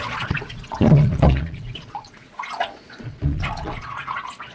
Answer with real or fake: fake